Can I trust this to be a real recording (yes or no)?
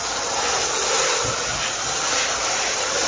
yes